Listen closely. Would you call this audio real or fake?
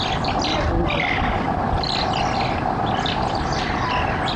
real